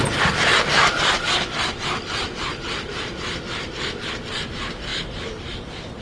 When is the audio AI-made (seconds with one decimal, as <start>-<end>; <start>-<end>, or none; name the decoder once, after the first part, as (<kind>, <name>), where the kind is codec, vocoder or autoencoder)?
0.5-4.1 (vocoder, BigVGAN v2); 4.9-6.0